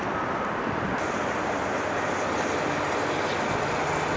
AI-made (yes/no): no